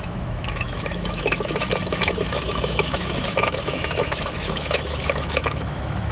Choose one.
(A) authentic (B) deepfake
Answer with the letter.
B